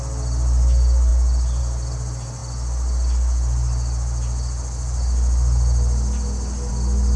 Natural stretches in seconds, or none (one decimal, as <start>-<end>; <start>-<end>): 0.0-7.2